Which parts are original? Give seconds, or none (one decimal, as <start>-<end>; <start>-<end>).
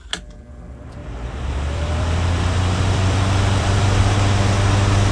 0.0-1.0; 4.1-5.1